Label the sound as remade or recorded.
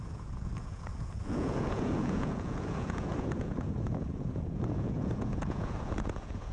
remade